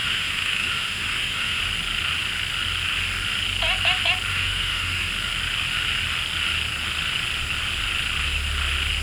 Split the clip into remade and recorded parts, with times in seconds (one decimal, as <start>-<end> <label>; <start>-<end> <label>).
0.0-1.6 remade; 1.6-4.3 recorded; 4.3-5.1 remade; 5.1-9.0 recorded